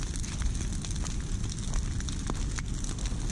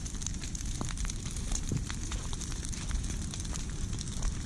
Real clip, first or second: first